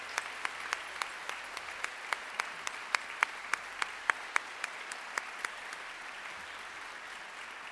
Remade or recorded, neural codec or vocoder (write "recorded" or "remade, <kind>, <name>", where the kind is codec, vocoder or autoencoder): recorded